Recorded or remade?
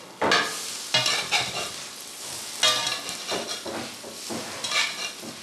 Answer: recorded